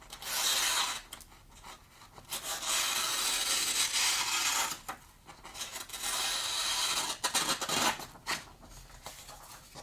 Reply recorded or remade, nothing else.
recorded